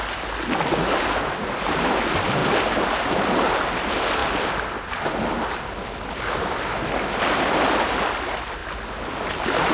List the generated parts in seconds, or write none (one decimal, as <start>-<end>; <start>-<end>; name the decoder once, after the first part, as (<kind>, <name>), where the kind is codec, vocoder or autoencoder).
none